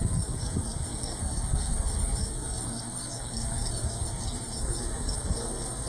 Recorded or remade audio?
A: remade